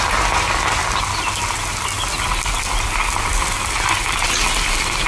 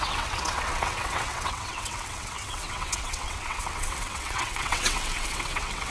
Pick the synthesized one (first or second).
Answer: second